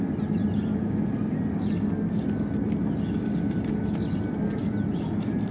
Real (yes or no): yes